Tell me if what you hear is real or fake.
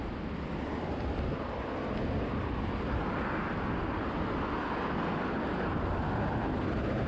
real